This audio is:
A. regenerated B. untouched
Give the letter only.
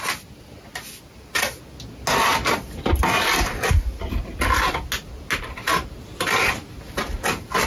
B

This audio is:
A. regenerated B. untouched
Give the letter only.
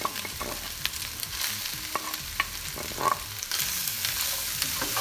B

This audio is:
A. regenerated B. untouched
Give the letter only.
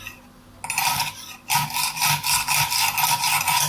B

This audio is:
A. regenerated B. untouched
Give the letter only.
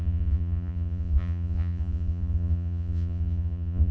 A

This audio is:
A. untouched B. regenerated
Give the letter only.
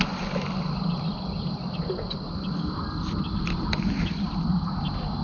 A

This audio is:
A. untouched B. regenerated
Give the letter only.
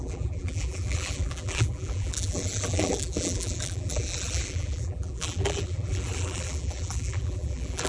B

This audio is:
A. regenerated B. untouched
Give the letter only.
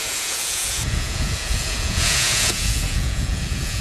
A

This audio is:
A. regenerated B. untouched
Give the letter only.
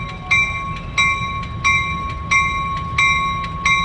B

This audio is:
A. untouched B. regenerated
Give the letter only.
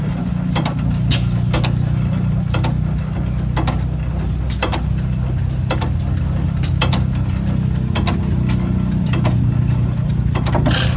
A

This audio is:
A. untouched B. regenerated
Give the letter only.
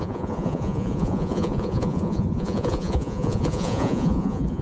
B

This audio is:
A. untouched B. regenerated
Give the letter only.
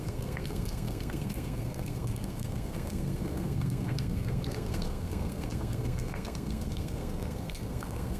B